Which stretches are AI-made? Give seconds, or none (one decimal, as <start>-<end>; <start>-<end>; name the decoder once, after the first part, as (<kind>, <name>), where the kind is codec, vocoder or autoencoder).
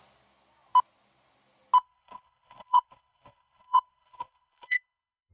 1.8-5.3 (codec, HILCodec)